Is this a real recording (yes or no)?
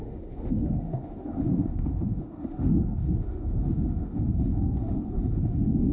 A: no